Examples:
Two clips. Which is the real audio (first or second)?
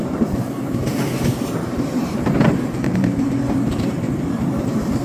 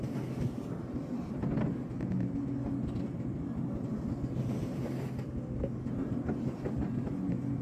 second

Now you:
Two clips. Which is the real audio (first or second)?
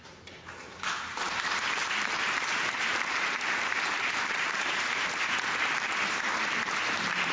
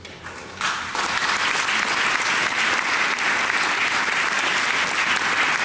second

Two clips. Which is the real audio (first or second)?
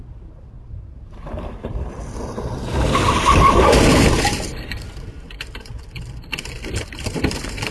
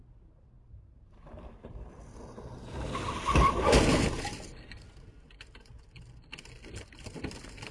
second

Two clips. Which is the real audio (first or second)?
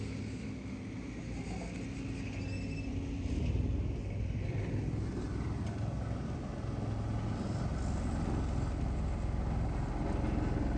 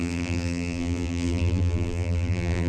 first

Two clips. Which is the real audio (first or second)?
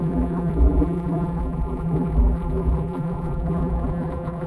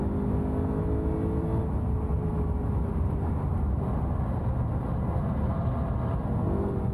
second